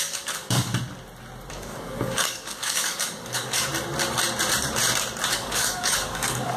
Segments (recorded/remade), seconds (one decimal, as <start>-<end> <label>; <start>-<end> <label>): 0.0-0.7 remade; 0.7-1.5 recorded; 1.5-3.7 remade; 3.7-5.3 recorded; 5.3-6.6 remade

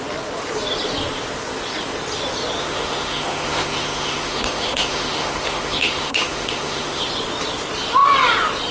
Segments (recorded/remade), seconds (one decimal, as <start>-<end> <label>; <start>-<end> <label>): 0.0-2.6 recorded; 2.6-7.0 remade; 7.0-8.7 recorded

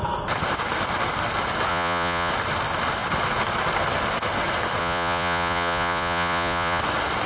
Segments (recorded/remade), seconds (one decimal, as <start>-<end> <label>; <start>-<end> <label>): 0.0-1.7 recorded; 1.7-2.3 remade; 2.3-4.8 recorded; 4.8-6.8 remade; 6.8-7.3 recorded

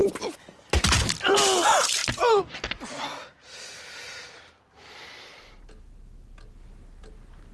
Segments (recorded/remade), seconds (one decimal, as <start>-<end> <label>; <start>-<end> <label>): 0.0-7.5 recorded

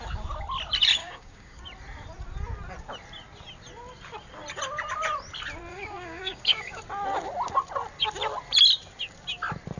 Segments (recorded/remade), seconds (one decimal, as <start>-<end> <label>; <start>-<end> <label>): 0.0-1.0 recorded; 1.0-1.6 remade; 1.6-5.7 recorded; 5.7-6.8 remade; 6.8-9.8 recorded

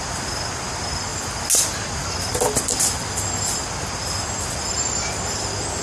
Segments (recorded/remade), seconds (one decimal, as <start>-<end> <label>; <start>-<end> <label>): 0.0-5.8 recorded

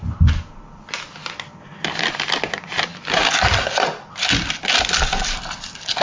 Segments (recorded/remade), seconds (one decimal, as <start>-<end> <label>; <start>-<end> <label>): 0.0-6.0 recorded